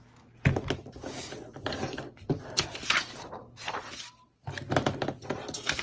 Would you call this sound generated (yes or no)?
no